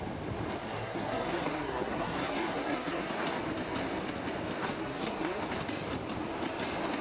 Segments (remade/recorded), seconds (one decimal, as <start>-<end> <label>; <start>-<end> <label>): 0.0-0.6 recorded; 0.6-3.1 remade; 3.1-4.8 recorded; 4.8-5.4 remade; 5.4-7.0 recorded